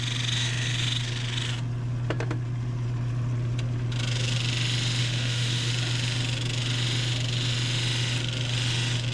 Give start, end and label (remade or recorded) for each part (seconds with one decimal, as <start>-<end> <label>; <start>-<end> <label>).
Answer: 0.0-5.0 recorded; 5.0-5.7 remade; 5.7-9.1 recorded